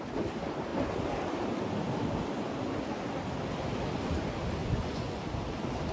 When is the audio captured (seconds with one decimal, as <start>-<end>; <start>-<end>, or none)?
0.0-4.6; 5.2-5.9